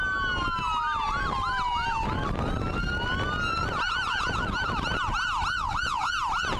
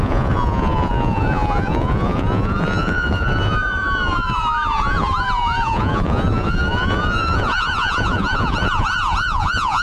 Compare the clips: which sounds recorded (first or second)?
first